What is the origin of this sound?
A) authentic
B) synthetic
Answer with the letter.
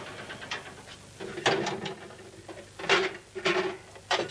A